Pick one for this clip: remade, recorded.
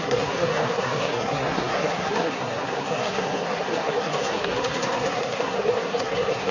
remade